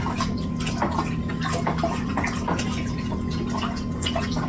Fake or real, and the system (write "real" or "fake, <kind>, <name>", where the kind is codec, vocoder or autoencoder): real